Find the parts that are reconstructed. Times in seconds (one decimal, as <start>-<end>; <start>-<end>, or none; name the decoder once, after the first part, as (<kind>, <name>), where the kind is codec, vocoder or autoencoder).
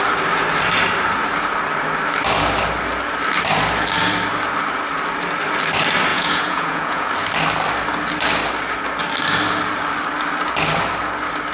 6.1-7.1 (vocoder, Vocos)